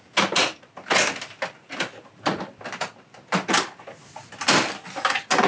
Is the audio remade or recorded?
recorded